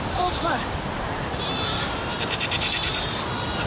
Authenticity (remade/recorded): remade